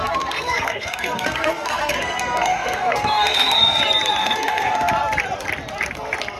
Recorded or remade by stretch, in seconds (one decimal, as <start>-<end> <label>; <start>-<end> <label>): 0.0-3.8 remade; 3.8-4.2 recorded; 4.2-4.9 remade; 4.9-6.4 recorded